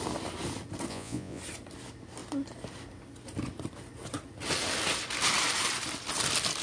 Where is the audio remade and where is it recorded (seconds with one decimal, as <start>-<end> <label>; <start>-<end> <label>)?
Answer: 0.0-0.9 recorded; 0.9-1.4 remade; 1.4-6.6 recorded